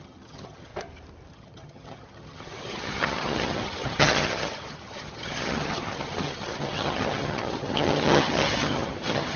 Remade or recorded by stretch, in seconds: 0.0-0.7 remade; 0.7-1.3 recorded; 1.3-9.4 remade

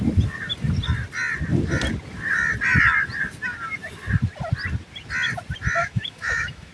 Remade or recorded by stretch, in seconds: 0.0-5.8 recorded; 5.8-6.7 remade

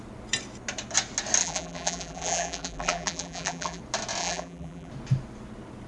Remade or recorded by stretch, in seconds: 0.0-1.4 recorded; 1.4-3.8 remade; 3.8-4.2 recorded; 4.2-4.9 remade; 4.9-5.9 recorded